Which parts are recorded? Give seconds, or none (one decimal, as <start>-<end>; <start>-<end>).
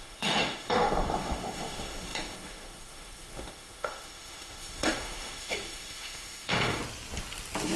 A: 6.8-7.8